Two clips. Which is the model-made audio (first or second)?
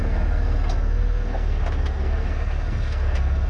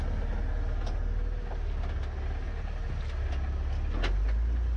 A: first